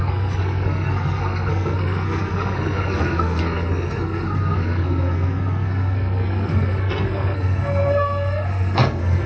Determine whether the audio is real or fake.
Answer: fake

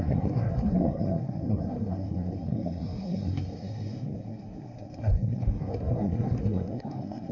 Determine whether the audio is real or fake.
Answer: fake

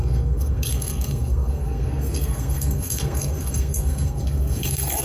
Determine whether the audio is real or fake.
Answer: fake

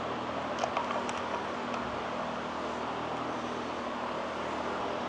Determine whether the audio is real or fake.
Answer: real